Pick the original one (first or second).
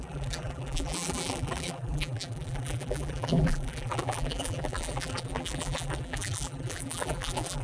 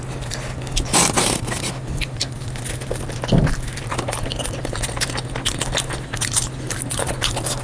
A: second